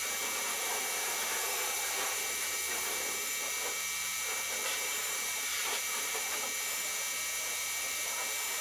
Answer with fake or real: fake